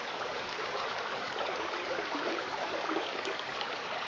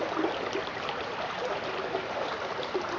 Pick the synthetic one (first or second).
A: first